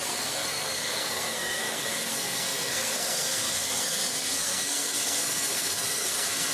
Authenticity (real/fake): fake